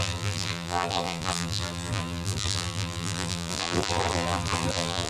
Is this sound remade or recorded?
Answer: remade